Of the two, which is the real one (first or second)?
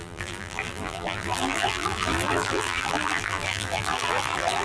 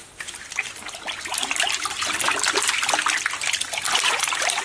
second